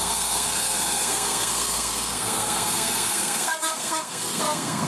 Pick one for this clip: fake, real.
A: fake